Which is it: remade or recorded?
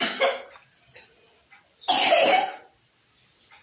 recorded